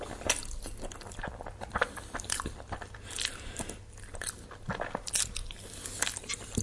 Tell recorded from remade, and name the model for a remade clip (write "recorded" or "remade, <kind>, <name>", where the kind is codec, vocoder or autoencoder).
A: recorded